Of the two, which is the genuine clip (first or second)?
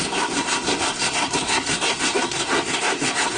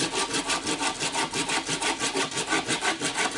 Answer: second